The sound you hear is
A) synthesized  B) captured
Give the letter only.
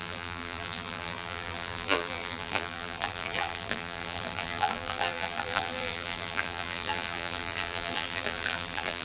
A